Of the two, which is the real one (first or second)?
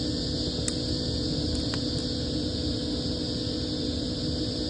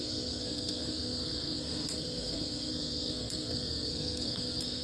first